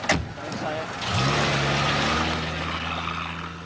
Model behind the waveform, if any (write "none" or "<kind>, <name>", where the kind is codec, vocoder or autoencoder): none